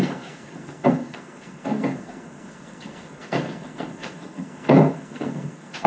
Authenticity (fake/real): fake